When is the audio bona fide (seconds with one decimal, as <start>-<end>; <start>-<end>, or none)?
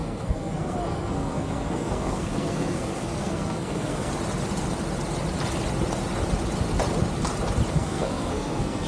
4.1-7.7